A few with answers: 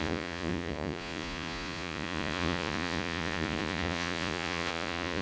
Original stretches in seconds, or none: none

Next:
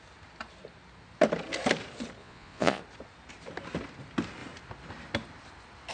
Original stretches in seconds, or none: 0.0-2.2; 2.8-5.9

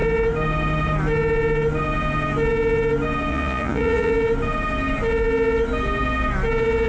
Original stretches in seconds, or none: 0.0-3.3; 4.1-6.9

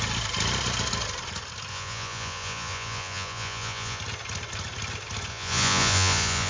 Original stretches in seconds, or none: 0.0-1.7; 4.0-5.3

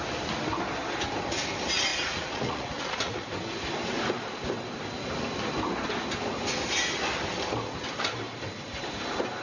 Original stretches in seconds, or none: 0.0-1.9; 3.3-9.4

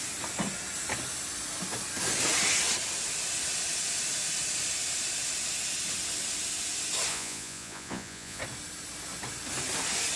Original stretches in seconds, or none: 0.0-7.1; 8.4-10.2

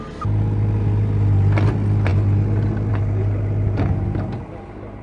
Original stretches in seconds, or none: 0.0-5.0

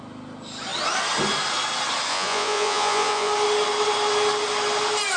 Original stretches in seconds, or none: 0.0-2.1; 3.3-5.2